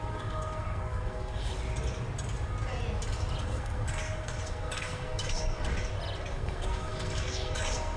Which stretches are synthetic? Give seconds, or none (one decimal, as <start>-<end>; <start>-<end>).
0.0-1.5; 3.4-5.7; 6.3-8.0